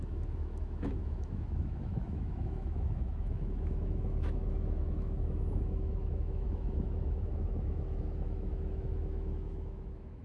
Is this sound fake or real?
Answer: fake